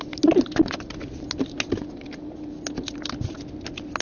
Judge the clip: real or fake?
real